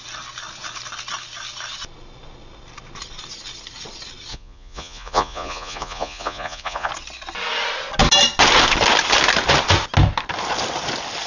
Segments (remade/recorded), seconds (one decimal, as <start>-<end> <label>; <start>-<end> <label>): 0.0-4.3 recorded; 4.3-6.9 remade; 6.9-11.3 recorded